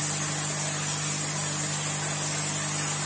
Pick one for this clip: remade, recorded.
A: recorded